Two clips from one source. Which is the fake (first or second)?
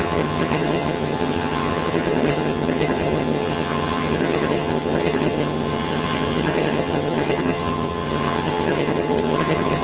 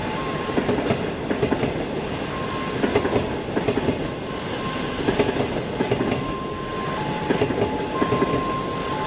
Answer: first